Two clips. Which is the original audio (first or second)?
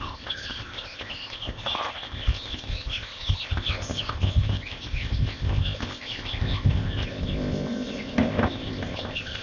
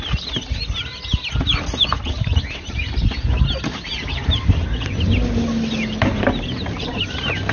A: second